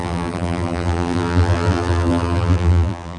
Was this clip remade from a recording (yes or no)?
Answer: yes